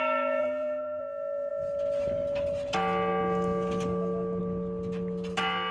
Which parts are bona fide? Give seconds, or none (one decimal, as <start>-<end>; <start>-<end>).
0.0-0.4; 1.0-5.7